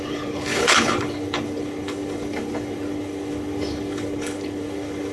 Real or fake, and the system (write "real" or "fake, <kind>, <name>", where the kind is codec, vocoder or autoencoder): fake, codec, HILCodec